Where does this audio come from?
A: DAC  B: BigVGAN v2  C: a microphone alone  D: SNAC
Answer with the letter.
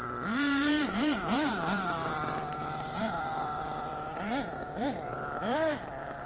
B